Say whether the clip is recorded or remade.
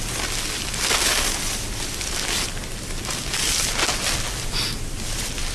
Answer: recorded